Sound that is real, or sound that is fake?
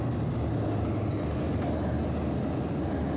real